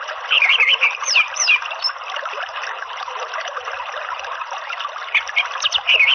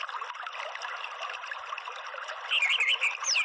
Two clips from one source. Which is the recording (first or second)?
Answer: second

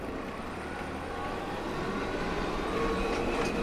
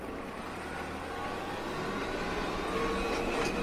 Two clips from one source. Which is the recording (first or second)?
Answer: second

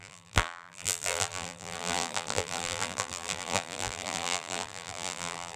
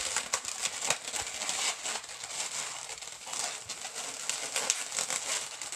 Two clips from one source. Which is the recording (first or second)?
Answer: second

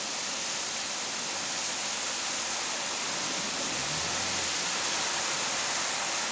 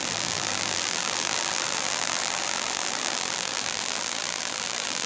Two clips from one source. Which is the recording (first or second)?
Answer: first